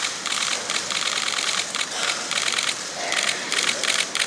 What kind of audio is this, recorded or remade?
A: recorded